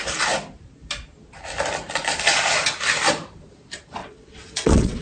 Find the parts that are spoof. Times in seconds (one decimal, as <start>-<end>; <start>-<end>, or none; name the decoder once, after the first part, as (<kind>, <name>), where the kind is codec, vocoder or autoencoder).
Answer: 4.0-5.0 (vocoder, WaveNeXt)